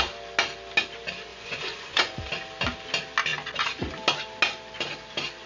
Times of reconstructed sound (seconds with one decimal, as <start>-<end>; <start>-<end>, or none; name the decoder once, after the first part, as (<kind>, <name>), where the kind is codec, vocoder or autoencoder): 1.3-2.3 (vocoder, Vocos)